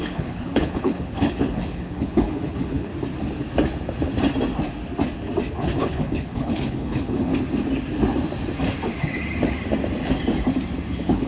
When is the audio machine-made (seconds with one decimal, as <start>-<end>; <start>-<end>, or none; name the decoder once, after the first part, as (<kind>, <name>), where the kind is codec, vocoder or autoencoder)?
0.0-2.9 (codec, HILCodec); 5.8-7.3; 10.9-11.3

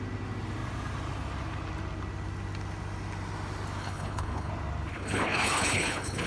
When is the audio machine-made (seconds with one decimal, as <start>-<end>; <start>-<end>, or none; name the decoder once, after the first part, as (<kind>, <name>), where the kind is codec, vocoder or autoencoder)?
3.8-4.5 (codec, HILCodec); 4.9-6.3

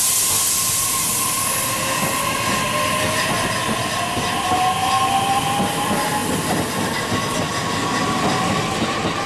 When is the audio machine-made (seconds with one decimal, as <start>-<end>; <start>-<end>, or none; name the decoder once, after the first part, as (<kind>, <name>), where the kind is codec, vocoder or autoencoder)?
none

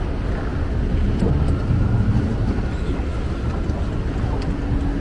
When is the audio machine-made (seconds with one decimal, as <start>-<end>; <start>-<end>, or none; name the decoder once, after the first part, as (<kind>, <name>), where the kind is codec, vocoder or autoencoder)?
none

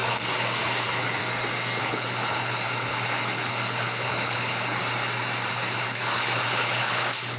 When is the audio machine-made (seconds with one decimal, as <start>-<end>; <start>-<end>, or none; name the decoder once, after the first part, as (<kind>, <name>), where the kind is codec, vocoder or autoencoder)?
0.0-1.2 (codec, HILCodec); 1.8-4.8; 5.5-7.4

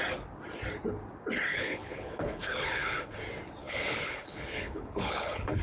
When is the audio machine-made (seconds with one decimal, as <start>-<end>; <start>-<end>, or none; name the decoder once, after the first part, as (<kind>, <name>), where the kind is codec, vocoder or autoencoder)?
1.5-3.2 (codec, HILCodec); 3.6-5.6

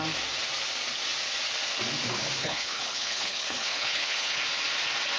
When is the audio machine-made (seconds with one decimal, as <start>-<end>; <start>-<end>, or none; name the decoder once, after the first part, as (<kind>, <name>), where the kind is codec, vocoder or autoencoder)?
2.4-4.4 (codec, HILCodec)

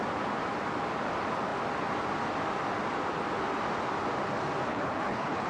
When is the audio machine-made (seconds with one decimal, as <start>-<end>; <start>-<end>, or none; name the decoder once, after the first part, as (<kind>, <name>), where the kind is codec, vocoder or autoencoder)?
4.7-5.5 (codec, HILCodec)